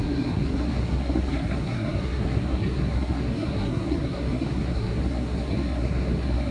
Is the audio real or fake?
fake